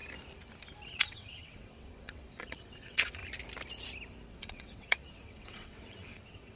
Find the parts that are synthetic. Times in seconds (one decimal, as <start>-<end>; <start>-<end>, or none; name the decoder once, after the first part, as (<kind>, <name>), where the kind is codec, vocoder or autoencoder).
0.9-3.2 (vocoder, WaveNeXt); 4.3-6.6